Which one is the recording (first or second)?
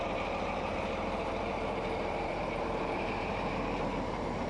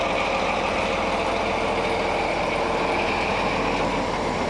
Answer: second